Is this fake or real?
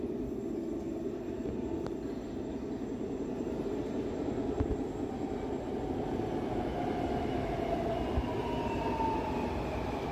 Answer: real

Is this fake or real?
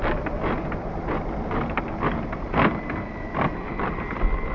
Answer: real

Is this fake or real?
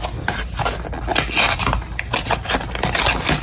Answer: real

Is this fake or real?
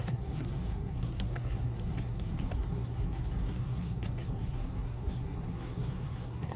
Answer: fake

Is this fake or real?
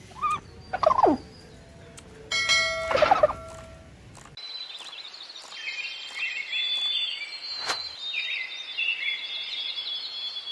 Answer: real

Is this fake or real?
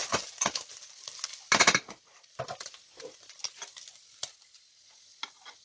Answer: real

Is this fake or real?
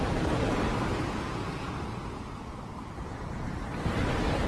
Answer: real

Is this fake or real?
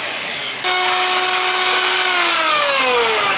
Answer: fake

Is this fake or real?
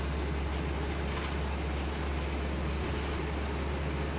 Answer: real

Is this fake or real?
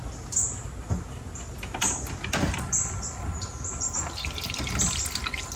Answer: real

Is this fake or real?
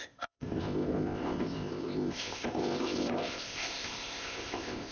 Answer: fake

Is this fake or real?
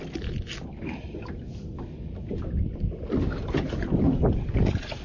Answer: real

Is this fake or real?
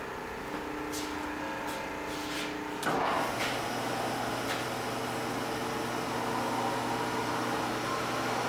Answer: real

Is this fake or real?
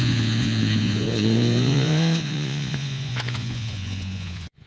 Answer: fake